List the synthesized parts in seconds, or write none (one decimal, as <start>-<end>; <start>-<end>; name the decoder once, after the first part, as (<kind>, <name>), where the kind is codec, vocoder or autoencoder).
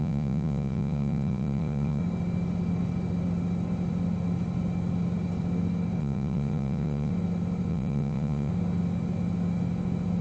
0.0-2.0 (vocoder, Vocos); 6.0-7.1; 7.7-8.5